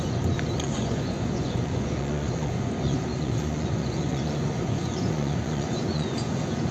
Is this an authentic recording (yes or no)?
no